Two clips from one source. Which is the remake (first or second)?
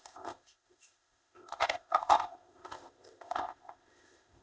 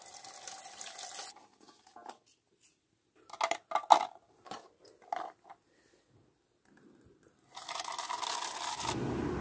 first